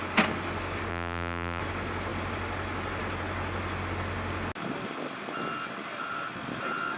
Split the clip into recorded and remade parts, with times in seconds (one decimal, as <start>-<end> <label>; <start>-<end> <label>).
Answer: 0.0-0.9 recorded; 0.9-1.6 remade; 1.6-7.0 recorded